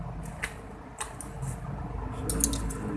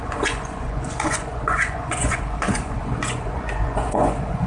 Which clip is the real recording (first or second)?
first